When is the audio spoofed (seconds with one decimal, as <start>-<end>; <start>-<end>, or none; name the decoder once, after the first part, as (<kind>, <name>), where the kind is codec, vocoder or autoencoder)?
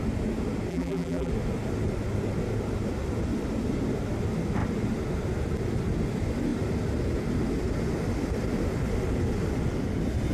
0.7-1.3 (vocoder, BigVGAN v2)